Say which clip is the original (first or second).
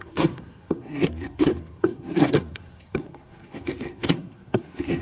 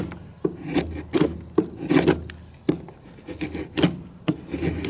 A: second